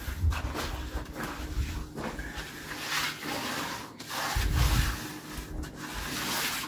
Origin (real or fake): real